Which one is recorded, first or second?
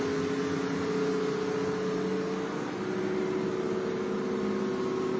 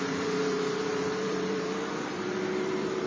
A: first